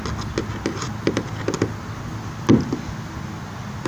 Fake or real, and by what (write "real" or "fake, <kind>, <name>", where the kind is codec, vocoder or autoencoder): real